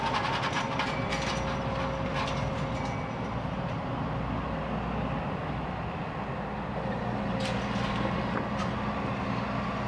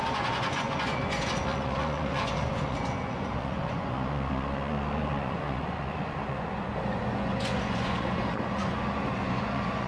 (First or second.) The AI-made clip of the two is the second